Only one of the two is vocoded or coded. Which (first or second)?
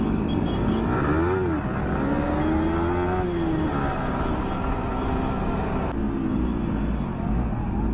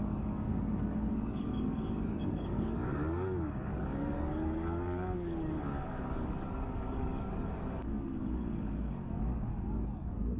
second